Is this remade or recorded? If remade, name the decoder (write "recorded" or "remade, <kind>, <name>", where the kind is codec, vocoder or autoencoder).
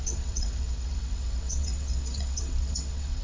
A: remade, vocoder, WaveNeXt